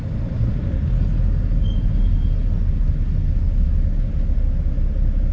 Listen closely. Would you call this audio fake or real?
real